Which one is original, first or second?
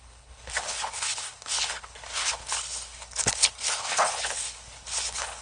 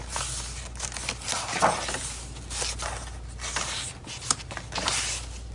second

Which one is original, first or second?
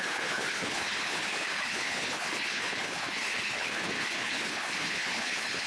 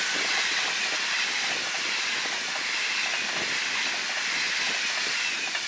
second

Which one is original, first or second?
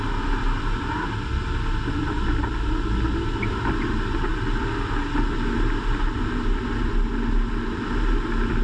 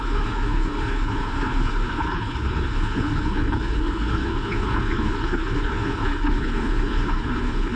first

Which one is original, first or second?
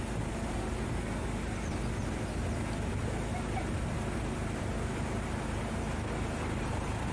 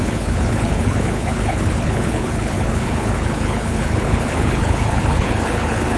first